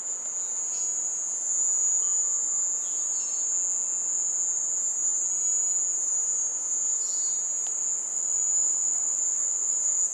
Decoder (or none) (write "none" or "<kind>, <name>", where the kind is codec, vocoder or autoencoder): none